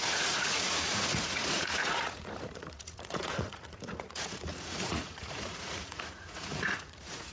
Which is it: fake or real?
fake